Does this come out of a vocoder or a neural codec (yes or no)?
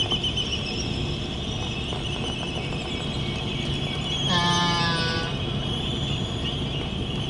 no